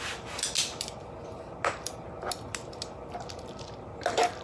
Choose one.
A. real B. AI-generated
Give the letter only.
A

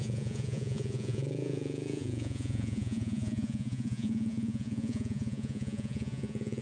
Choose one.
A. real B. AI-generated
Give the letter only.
B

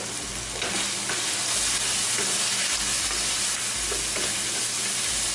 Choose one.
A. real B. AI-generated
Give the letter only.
A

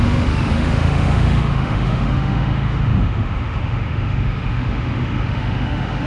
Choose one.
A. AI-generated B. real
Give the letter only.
A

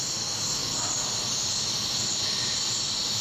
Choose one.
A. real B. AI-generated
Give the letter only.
A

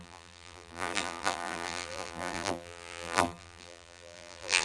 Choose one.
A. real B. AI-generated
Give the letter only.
B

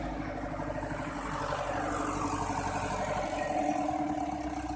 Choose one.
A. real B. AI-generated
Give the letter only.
A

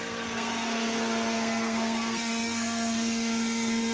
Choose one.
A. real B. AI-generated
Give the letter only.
B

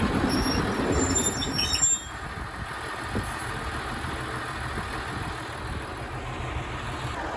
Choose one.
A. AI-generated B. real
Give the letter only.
B